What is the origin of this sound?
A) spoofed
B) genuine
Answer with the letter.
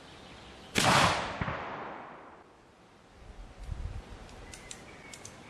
B